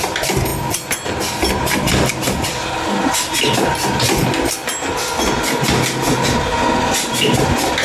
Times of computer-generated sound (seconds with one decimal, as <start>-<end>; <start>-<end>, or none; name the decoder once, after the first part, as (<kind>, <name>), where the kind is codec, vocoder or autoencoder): none